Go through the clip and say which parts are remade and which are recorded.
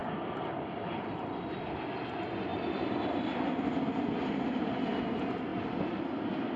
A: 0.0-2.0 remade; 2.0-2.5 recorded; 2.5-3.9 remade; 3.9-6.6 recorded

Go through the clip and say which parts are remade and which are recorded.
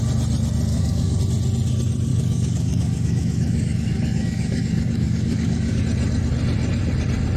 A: 0.0-0.7 recorded; 0.7-1.2 remade; 1.2-2.1 recorded; 2.1-5.8 remade; 5.8-7.4 recorded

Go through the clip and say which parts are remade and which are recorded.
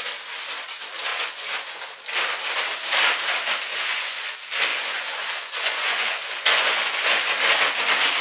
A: 0.0-1.1 recorded; 1.1-1.8 remade; 1.8-3.7 recorded; 3.7-4.2 remade; 4.2-4.7 recorded; 4.7-7.2 remade; 7.2-8.2 recorded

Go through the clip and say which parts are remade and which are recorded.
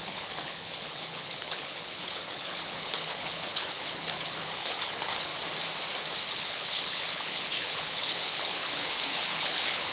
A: 0.0-5.3 remade; 5.3-6.3 recorded; 6.3-9.9 remade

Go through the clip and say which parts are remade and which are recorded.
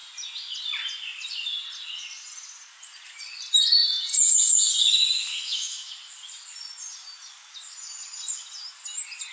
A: 0.0-5.3 recorded; 5.3-5.9 remade; 5.9-9.3 recorded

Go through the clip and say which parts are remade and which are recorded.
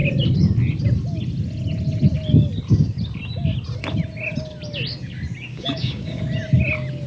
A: 0.0-5.5 recorded; 5.5-6.2 remade; 6.2-7.1 recorded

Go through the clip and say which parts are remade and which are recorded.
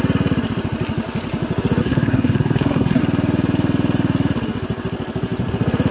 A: 0.0-1.8 recorded; 1.8-3.0 remade; 3.0-5.9 recorded